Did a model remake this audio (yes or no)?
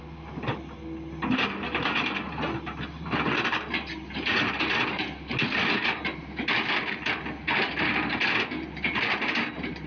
no